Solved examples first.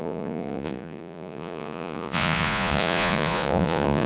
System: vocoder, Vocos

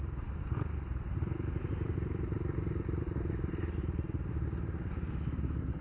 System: vocoder, BigVGAN v2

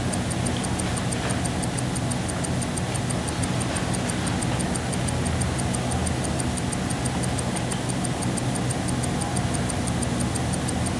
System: none